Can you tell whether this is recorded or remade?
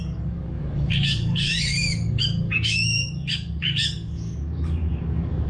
remade